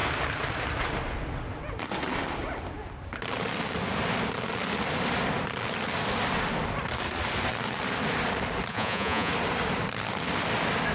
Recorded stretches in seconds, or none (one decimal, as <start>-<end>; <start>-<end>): 0.0-8.7; 9.3-10.9

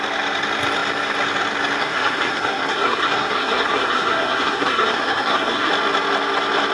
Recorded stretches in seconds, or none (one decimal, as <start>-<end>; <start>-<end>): 0.0-1.8; 5.7-6.7

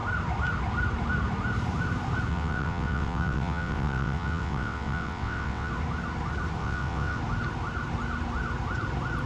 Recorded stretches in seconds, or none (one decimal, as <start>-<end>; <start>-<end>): 0.0-2.3; 5.7-6.6; 7.2-9.3

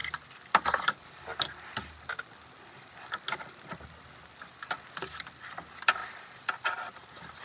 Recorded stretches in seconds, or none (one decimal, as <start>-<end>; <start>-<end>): 0.0-7.4

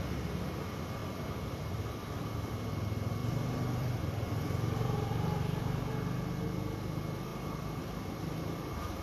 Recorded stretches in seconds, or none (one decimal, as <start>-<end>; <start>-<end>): 0.0-1.0; 2.5-3.2; 5.6-7.3; 8.3-9.0